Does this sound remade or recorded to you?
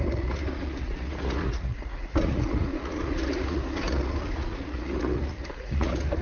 remade